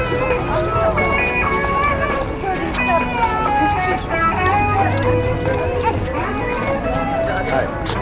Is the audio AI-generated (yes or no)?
no